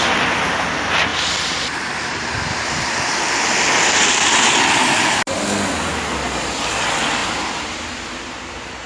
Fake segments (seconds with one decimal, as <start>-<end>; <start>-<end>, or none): 1.1-2.1